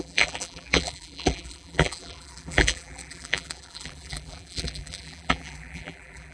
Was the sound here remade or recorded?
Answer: remade